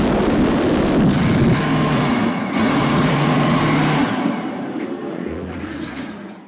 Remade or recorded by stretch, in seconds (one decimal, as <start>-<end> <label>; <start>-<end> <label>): 0.0-1.9 recorded; 1.9-3.6 remade; 3.6-5.1 recorded; 5.1-6.5 remade